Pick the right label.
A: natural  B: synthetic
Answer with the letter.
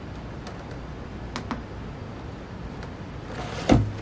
A